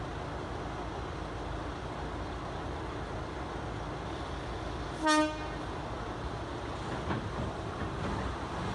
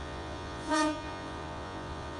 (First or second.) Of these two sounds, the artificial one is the second